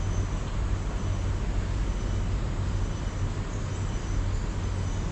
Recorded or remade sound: recorded